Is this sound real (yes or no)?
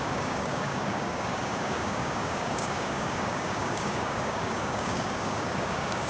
no